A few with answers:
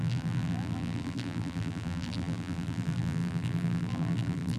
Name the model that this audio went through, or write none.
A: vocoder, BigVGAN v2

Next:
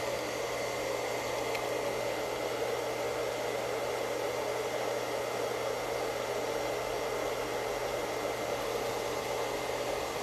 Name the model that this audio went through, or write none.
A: none